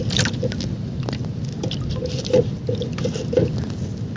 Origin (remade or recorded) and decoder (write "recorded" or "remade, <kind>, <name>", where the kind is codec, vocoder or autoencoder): recorded